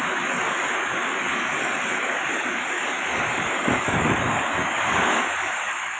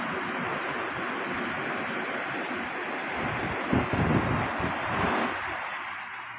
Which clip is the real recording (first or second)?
second